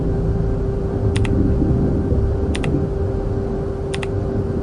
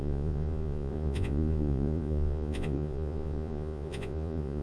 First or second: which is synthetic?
second